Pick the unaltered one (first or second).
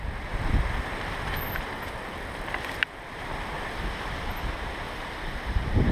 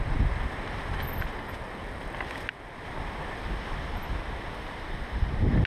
second